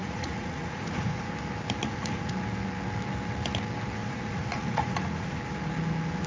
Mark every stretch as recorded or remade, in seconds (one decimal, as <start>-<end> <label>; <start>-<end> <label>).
0.0-1.3 remade; 1.3-1.8 recorded; 1.8-2.3 remade; 2.3-4.0 recorded; 4.0-5.4 remade; 5.4-6.3 recorded